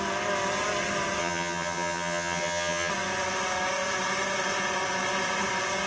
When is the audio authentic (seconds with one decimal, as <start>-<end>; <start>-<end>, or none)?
0.0-1.2; 2.9-5.9